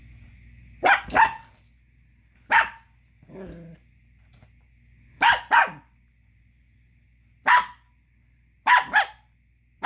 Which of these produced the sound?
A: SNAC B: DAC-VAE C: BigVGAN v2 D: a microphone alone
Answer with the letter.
D